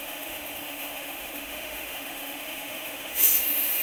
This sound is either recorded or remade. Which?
remade